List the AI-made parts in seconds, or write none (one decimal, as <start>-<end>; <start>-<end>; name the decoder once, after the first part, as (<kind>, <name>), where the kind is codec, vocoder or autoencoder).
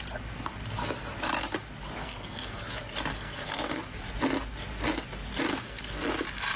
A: 2.0-2.6 (codec, SNAC); 3.1-3.8; 5.5-6.1